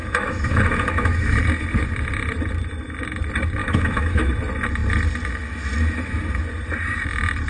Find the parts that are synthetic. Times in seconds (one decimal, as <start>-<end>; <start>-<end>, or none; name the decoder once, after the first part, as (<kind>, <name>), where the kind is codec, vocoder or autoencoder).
0.0-1.4 (autoencoder, DAC-VAE); 3.6-4.3